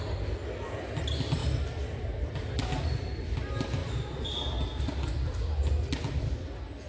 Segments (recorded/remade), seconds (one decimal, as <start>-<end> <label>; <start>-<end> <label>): 0.0-1.4 recorded; 1.4-2.4 remade; 2.4-3.8 recorded; 3.8-6.3 remade; 6.3-6.9 recorded